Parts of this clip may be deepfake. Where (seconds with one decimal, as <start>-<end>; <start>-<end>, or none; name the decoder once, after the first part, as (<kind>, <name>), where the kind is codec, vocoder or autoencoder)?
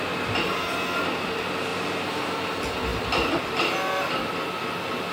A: 1.7-2.2 (vocoder, BigVGAN v2); 2.9-4.3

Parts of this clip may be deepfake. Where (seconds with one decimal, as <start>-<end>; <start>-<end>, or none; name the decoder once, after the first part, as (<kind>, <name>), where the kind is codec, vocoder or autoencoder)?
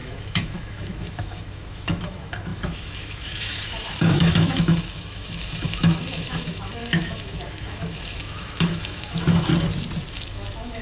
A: 0.0-9.5 (autoencoder, DAC-VAE); 10.1-10.8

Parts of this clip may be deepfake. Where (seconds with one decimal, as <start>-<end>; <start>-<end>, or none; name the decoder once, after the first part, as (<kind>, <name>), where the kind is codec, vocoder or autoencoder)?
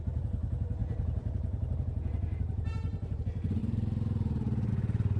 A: 0.8-3.2 (vocoder, BigVGAN v2); 3.6-4.7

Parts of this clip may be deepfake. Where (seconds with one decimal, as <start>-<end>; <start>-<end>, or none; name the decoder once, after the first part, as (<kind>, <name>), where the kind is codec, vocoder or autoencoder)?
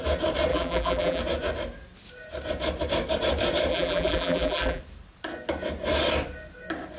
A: 0.5-1.2 (vocoder, BigVGAN v2); 3.7-4.8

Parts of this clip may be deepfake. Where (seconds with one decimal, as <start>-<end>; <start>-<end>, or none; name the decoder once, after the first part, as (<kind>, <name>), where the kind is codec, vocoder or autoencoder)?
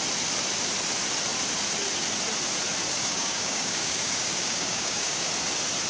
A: 3.1-5.3 (codec, DAC)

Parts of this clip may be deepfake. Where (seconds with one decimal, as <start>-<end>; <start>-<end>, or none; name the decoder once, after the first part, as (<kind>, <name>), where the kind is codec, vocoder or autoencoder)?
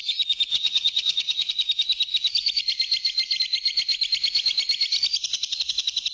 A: 0.5-1.5 (vocoder, HiFi-GAN)